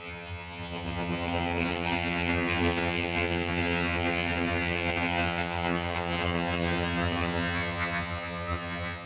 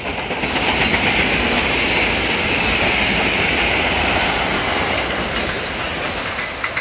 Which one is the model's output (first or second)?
first